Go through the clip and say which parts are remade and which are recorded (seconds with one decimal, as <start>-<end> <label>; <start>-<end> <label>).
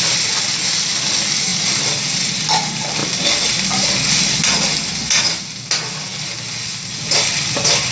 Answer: 0.0-7.9 recorded